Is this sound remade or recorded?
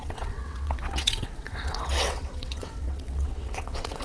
remade